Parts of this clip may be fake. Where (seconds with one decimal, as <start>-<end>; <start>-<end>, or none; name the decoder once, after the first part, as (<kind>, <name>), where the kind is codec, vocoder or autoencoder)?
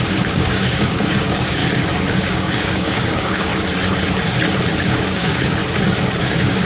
0.0-1.6 (codec, DAC); 2.1-3.5; 4.8-5.6; 6.2-6.7